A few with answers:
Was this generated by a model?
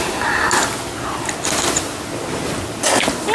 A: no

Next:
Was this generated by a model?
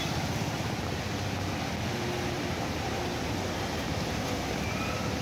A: no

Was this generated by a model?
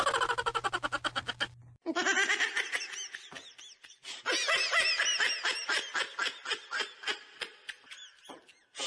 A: no